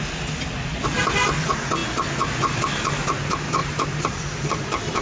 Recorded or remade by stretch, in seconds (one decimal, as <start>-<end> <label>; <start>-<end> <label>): 0.0-3.6 recorded; 3.6-5.0 remade